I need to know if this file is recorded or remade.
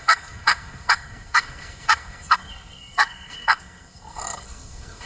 remade